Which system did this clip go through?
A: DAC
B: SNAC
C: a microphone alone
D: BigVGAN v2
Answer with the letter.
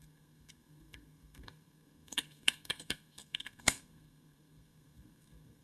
B